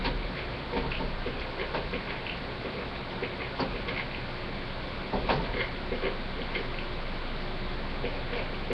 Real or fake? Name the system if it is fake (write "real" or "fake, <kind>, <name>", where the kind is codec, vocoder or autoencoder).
real